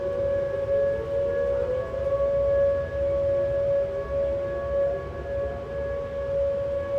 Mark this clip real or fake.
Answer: real